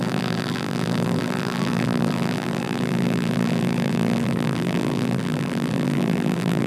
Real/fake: fake